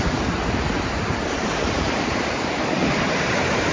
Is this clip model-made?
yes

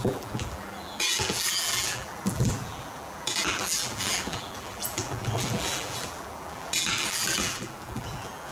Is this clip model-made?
yes